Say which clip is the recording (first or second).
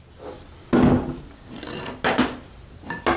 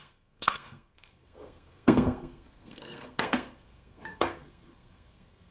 first